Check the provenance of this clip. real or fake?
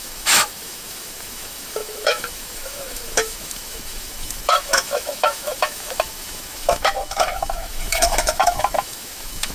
fake